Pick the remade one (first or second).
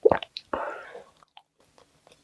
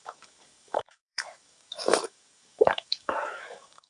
second